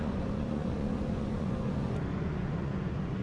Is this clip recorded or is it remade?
remade